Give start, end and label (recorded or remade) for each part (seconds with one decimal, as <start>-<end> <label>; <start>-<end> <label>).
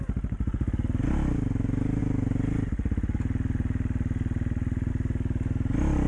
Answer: 0.0-6.1 recorded